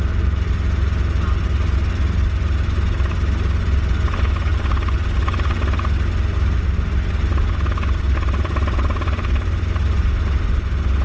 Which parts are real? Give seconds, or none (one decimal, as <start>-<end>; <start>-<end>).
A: 0.0-11.0